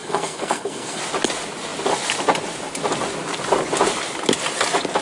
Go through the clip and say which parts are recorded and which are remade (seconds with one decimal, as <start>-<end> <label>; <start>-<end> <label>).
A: 0.0-1.0 remade; 1.0-5.0 recorded